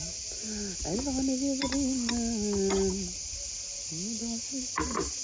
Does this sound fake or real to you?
real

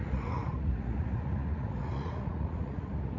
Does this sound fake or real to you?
fake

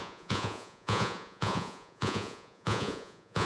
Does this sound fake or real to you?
fake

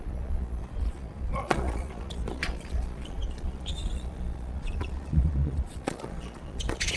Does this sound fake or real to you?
fake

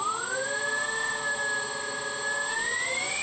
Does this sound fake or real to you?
real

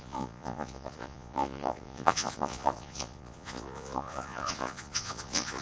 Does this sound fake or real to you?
fake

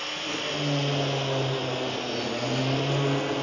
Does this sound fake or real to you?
real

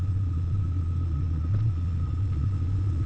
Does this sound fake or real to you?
fake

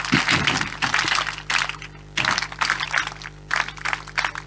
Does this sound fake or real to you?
real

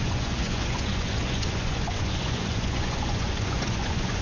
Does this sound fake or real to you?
fake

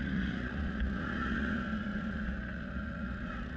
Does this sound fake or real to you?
fake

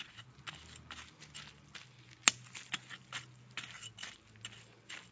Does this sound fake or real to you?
real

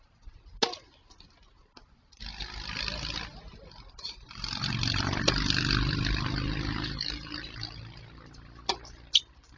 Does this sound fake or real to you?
real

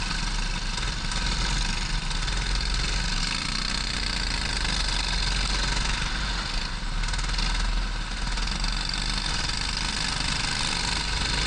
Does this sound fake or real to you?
real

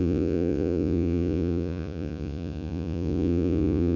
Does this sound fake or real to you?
fake